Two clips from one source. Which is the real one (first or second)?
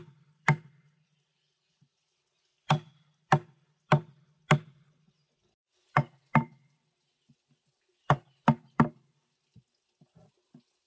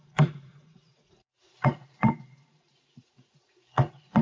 first